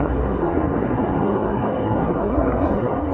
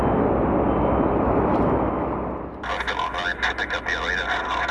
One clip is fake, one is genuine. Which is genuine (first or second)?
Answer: second